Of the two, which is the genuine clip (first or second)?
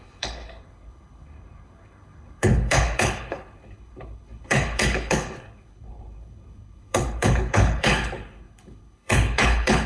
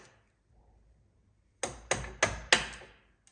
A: second